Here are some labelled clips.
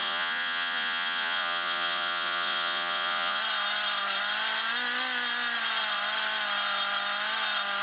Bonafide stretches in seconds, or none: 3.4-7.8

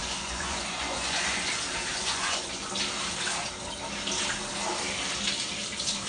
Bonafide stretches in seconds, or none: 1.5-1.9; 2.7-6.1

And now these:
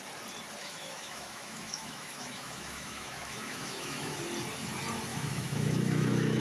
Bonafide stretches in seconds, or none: 0.0-0.6; 4.2-5.1

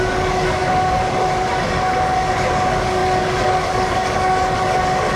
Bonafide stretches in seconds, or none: none

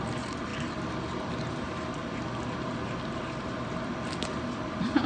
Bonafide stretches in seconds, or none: 0.5-3.6

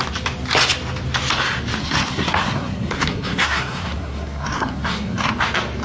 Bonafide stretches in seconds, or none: 0.0-1.8; 5.3-5.8

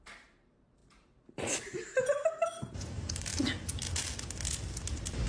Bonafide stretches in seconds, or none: 3.3-5.3